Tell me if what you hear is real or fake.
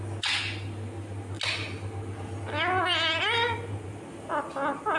real